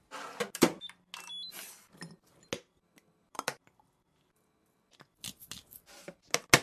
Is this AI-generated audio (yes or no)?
no